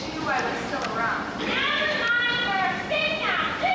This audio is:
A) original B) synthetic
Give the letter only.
B